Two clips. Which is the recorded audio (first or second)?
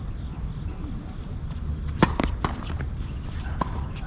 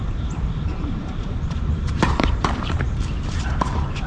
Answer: first